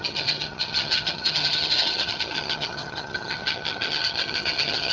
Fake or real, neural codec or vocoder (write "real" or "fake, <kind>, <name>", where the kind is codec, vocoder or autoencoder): fake, vocoder, HiFi-GAN